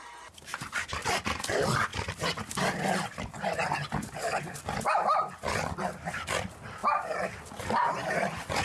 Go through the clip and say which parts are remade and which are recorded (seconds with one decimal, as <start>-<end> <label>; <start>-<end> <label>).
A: 0.0-8.6 recorded